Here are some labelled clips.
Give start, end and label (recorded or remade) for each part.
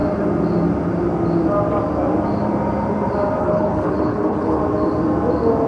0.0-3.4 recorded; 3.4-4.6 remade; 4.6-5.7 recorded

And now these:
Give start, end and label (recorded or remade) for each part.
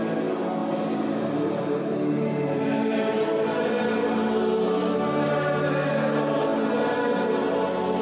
0.0-0.6 recorded; 0.6-3.8 remade; 3.8-8.0 recorded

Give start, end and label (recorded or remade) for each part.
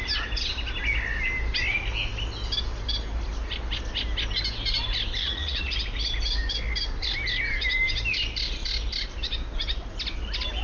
0.0-5.2 recorded; 5.2-5.7 remade; 5.7-10.6 recorded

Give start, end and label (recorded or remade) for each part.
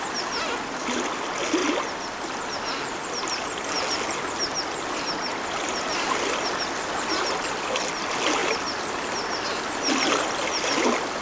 0.0-11.2 recorded